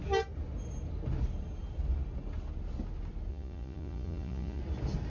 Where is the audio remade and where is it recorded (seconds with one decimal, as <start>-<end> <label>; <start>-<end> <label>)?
0.0-3.3 recorded; 3.3-4.6 remade; 4.6-5.1 recorded